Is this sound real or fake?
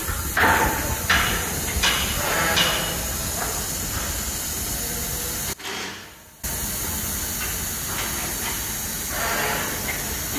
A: real